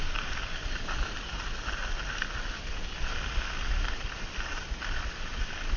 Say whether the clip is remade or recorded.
recorded